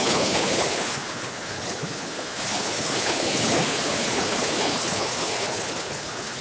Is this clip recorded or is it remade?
remade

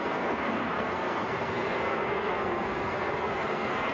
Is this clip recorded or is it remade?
remade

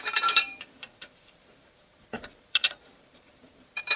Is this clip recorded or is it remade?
remade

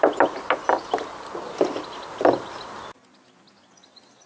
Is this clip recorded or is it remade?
recorded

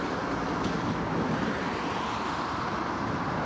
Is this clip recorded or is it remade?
recorded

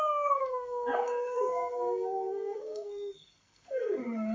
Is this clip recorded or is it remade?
remade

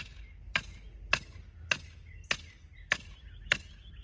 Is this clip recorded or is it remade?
recorded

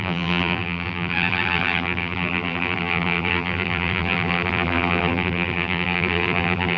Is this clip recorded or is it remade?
remade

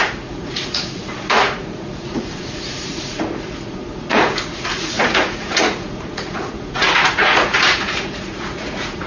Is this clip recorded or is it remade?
remade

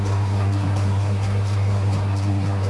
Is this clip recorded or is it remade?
remade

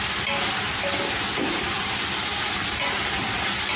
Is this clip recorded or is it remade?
recorded